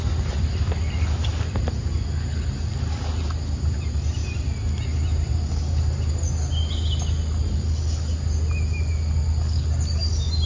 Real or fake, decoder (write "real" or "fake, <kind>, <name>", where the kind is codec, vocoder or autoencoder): real